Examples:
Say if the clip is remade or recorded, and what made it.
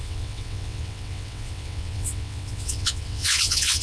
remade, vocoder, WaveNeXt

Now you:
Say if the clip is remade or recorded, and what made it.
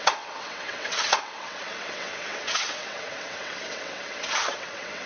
remade, vocoder, WaveNeXt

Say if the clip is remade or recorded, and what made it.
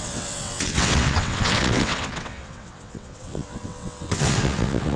remade, vocoder, WaveNeXt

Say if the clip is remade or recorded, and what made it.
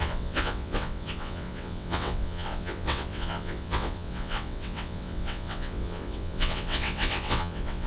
remade, vocoder, WaveNeXt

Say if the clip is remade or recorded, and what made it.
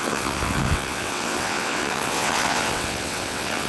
remade, vocoder, WaveNeXt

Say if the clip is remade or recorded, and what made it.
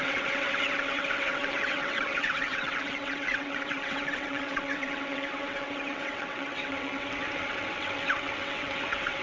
remade, vocoder, WaveNeXt